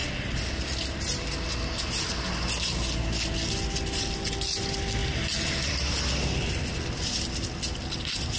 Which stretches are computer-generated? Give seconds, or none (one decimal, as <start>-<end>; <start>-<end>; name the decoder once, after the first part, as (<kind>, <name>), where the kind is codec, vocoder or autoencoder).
none